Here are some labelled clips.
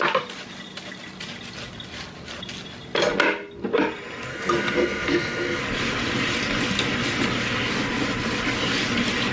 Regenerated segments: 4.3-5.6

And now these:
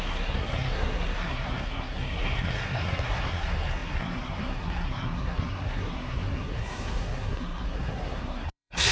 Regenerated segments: 0.0-8.9

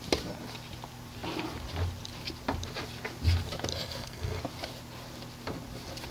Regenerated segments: 3.7-4.4

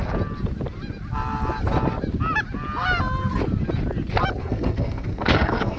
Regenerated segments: 4.4-5.8

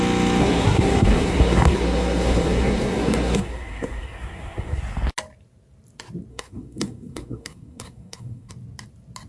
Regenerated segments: 0.4-4.8; 6.3-8.5

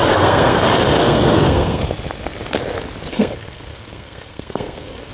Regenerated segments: 0.0-0.6; 1.0-1.8; 3.1-5.1

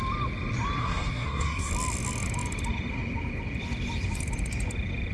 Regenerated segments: 0.8-1.7